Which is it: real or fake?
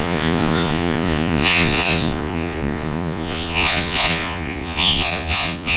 fake